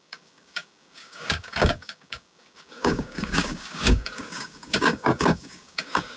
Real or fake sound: fake